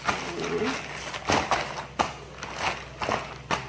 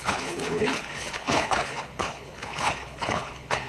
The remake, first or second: second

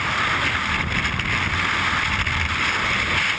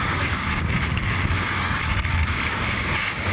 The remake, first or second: second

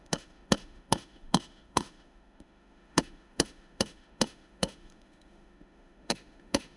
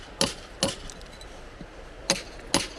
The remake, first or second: first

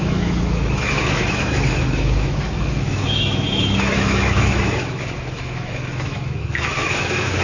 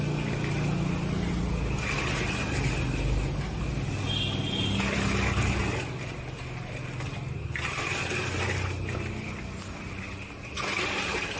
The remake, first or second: first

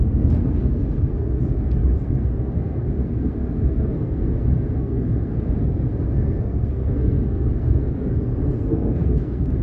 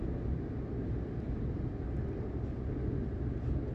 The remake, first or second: first